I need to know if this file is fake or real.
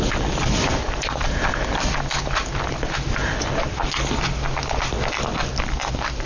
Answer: real